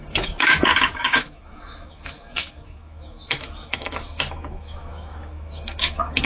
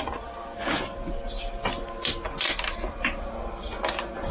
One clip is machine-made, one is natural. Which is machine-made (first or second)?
first